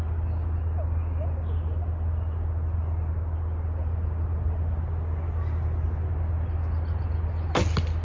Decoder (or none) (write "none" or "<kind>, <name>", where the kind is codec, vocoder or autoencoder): none